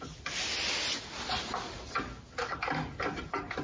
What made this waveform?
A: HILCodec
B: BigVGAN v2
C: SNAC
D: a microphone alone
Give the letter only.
D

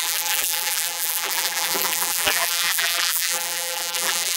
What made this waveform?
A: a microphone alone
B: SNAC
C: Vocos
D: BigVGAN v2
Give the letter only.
D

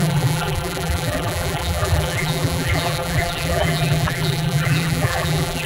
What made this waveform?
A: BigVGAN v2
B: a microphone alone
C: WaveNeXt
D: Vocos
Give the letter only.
A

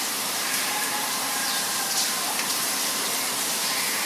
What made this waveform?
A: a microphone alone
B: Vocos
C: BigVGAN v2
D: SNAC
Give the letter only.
C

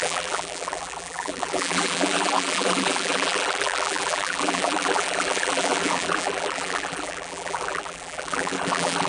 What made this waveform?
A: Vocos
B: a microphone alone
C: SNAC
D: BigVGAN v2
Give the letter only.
D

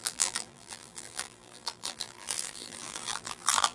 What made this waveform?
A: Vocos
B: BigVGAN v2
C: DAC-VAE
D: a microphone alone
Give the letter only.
B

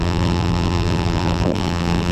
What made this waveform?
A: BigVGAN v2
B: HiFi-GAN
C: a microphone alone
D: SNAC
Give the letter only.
A